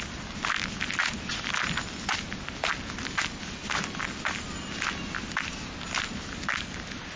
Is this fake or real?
real